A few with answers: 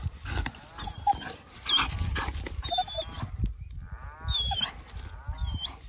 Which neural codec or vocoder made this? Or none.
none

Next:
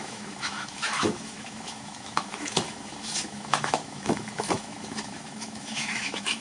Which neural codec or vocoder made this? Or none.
autoencoder, DAC-VAE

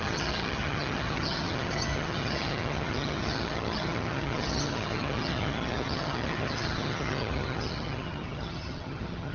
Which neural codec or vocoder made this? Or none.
vocoder, HiFi-GAN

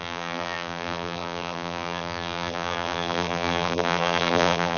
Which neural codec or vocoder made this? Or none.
vocoder, BigVGAN v2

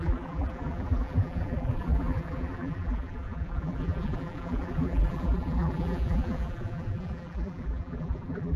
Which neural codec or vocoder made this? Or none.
vocoder, BigVGAN v2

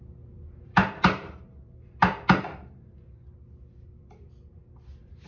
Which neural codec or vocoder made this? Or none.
none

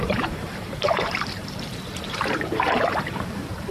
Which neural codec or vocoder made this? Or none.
vocoder, BigVGAN v2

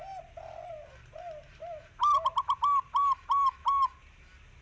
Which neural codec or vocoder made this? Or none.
none